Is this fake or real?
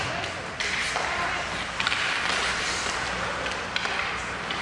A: real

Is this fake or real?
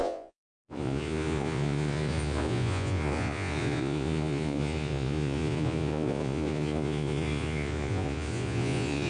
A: fake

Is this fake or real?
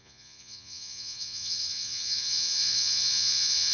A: fake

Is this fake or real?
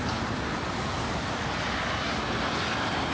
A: real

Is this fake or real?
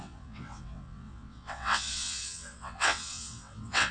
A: fake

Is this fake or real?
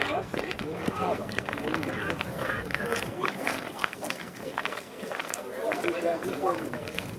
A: fake